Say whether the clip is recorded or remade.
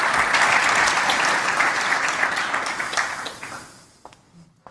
recorded